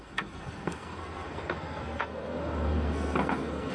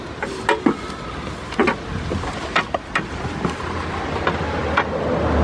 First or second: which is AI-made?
first